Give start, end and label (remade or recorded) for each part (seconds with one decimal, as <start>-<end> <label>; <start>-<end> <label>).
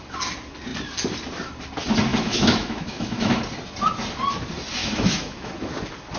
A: 0.0-2.1 recorded; 2.1-3.4 remade; 3.4-4.8 recorded; 4.8-5.5 remade; 5.5-6.2 recorded